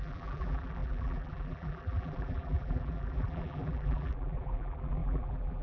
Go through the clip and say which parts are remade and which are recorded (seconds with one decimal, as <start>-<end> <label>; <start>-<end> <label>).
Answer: 0.0-5.6 remade